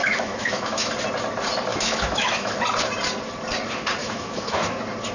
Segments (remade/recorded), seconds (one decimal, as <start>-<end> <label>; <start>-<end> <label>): 0.0-0.9 remade; 0.9-1.7 recorded; 1.7-2.5 remade; 2.5-4.0 recorded; 4.0-4.6 remade; 4.6-5.1 recorded